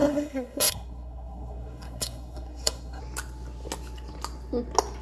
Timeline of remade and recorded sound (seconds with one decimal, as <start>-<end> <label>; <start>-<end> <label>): 0.0-3.0 remade; 3.0-5.0 recorded